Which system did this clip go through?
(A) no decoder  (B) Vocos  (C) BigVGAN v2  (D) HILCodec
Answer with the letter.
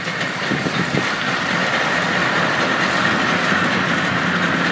A